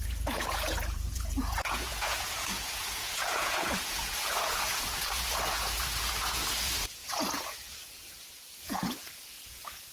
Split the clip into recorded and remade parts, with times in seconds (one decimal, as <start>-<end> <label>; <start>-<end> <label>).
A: 0.0-9.9 remade